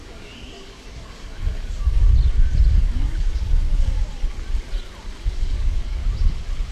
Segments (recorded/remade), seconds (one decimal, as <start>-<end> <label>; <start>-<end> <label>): 0.0-2.1 remade; 2.1-2.7 recorded; 2.7-4.1 remade; 4.1-5.0 recorded; 5.0-6.0 remade; 6.0-6.7 recorded